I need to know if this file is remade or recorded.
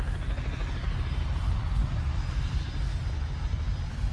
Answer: recorded